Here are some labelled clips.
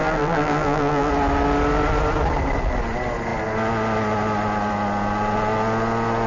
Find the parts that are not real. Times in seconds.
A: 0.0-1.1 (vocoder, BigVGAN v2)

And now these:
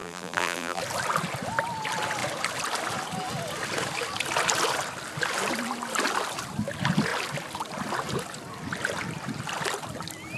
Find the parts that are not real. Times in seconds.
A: 0.0-0.8 (vocoder, BigVGAN v2)

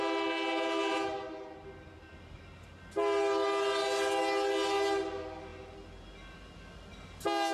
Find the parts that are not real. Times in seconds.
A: none

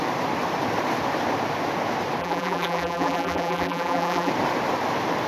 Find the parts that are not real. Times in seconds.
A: 2.2-4.3 (vocoder, BigVGAN v2)

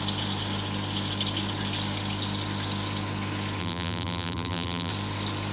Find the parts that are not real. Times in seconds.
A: 3.6-4.9 (vocoder, BigVGAN v2)